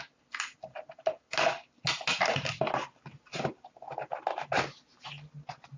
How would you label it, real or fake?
real